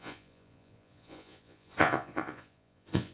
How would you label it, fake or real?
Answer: fake